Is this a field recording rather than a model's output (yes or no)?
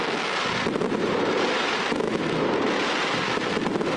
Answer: yes